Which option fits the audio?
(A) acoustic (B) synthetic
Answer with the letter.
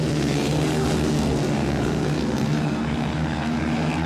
B